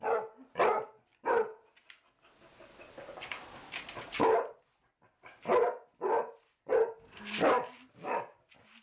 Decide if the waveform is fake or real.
real